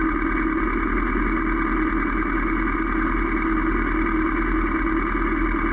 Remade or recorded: recorded